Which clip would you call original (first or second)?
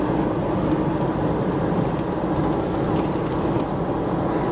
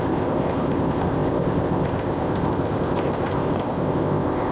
first